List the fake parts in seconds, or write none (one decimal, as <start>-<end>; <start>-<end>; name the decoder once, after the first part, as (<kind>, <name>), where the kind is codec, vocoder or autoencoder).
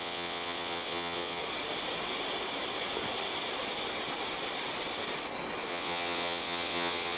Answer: 0.0-1.4 (vocoder, WaveNeXt); 5.7-7.2